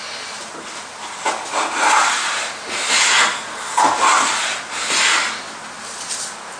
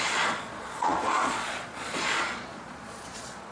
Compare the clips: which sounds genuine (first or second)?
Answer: first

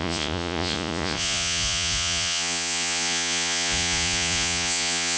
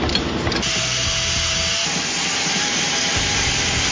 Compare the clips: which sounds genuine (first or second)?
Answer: second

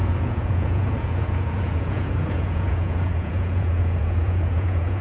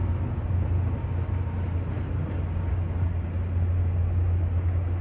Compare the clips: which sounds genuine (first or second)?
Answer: second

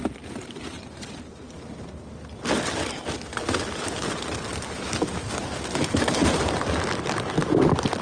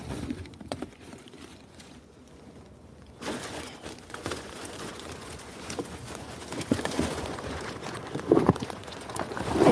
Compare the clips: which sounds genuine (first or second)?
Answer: first